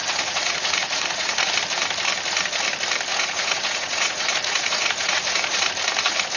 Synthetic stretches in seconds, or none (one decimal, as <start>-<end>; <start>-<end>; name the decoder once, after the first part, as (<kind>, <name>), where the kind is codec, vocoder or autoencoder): 0.0-1.5 (vocoder, Vocos); 3.1-5.7